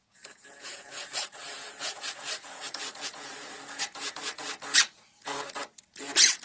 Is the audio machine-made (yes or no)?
yes